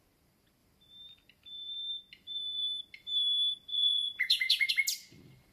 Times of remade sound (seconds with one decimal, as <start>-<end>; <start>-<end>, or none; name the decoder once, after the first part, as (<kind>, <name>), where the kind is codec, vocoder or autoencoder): 3.7-4.7 (vocoder, Vocos)